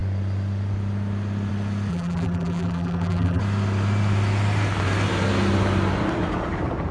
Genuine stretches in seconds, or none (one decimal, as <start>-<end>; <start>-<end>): 0.0-1.9; 3.4-6.9